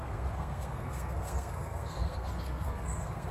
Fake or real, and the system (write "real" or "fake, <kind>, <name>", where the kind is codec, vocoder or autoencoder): fake, codec, SNAC